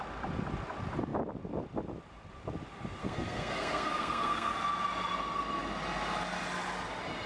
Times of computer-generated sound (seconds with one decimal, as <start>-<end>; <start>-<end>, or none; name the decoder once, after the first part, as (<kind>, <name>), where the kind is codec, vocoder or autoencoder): 3.0-4.5 (codec, SNAC)